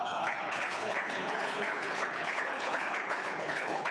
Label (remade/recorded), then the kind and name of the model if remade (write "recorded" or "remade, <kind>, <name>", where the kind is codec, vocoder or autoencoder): remade, codec, HILCodec